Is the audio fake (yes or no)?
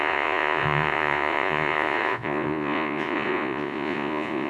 yes